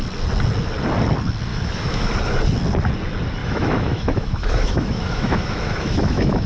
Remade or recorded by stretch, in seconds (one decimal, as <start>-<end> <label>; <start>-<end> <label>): 0.0-1.5 recorded; 1.5-2.1 remade; 2.1-3.4 recorded; 3.4-6.5 remade